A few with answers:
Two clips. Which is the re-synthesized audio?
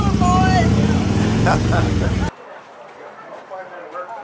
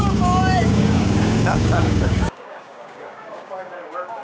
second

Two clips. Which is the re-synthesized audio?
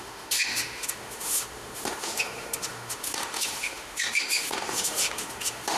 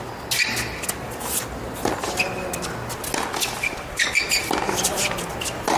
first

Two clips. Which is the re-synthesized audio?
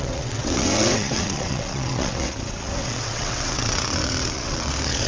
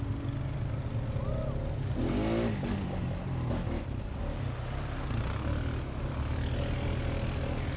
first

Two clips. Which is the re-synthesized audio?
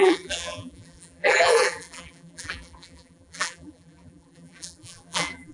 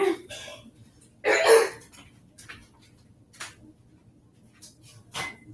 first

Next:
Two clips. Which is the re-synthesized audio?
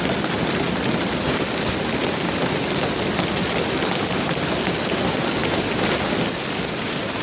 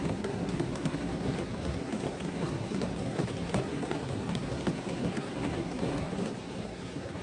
second